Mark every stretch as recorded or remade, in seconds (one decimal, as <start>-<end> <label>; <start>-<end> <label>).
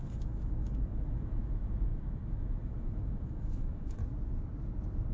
0.0-4.0 remade; 4.0-5.1 recorded